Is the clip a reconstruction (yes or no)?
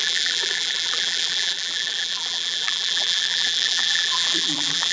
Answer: yes